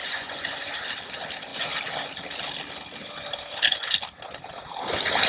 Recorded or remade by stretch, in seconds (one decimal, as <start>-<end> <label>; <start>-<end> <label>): 0.0-0.7 remade; 0.7-5.3 recorded